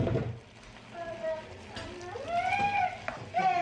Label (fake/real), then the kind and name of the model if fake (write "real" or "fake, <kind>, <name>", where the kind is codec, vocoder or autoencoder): real